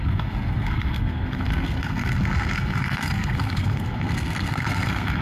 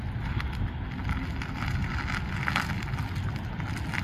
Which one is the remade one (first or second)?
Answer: first